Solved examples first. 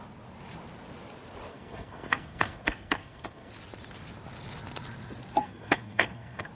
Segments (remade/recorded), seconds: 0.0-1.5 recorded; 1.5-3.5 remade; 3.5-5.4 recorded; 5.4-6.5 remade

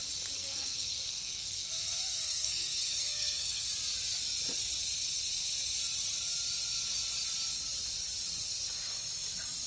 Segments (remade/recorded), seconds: 0.0-0.4 recorded; 0.4-3.7 remade; 3.7-9.7 recorded

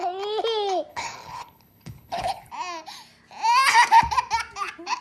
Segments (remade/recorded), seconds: 0.0-0.9 recorded; 0.9-2.5 remade; 2.5-5.0 recorded

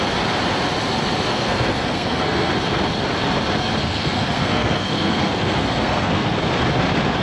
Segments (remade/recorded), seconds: 0.0-1.3 recorded; 1.3-2.5 remade; 2.5-3.8 recorded; 3.8-6.4 remade; 6.4-7.2 recorded